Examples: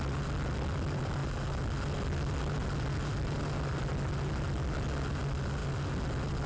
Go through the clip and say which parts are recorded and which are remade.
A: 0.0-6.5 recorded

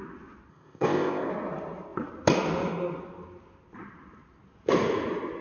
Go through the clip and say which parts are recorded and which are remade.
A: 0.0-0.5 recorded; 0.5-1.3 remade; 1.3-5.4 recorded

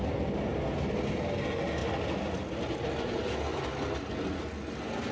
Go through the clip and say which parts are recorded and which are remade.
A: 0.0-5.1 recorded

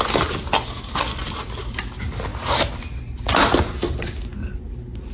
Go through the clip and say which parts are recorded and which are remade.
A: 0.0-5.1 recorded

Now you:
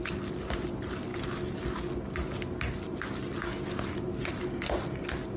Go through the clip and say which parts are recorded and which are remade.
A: 0.0-5.4 recorded

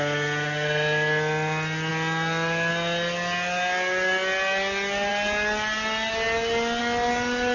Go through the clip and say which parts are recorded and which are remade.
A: 0.0-7.5 recorded

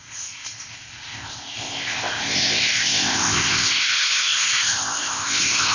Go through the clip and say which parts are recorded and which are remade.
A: 0.0-5.7 remade